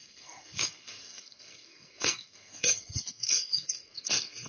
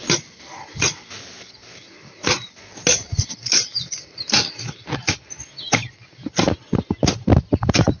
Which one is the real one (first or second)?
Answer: second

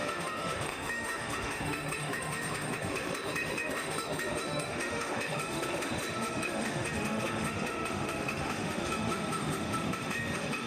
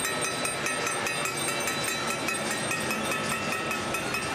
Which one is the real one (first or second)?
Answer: second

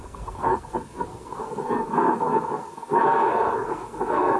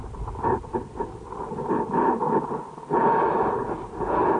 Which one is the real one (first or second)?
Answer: second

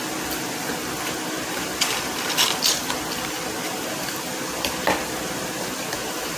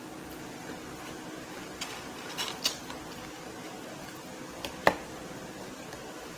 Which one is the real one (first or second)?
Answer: second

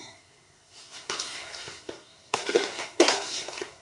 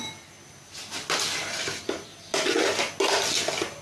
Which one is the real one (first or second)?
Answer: second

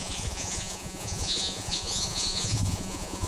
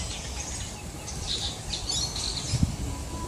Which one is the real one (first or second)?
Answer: second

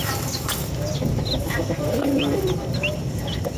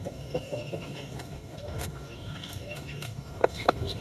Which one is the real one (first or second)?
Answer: first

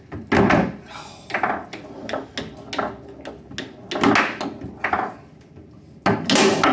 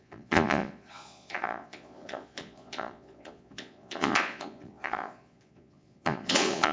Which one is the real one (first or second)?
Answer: first